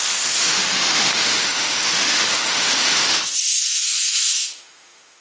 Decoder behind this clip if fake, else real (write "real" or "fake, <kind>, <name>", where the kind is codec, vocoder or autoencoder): fake, autoencoder, DAC-VAE